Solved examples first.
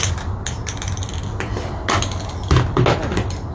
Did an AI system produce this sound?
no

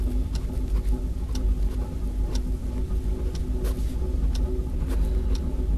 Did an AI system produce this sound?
no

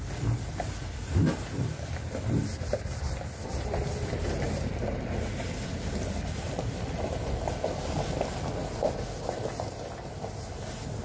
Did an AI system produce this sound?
yes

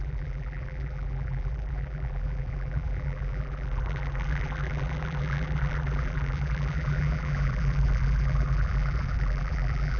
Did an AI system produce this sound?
yes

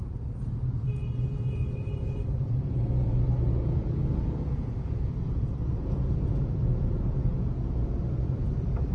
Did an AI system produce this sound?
yes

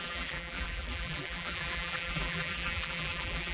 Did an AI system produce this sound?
yes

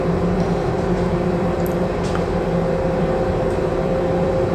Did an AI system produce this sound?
yes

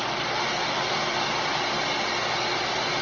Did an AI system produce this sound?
no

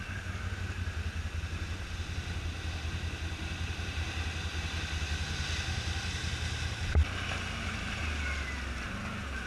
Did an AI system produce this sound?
no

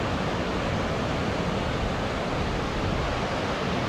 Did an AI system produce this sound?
no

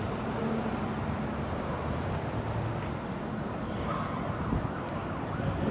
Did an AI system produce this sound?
no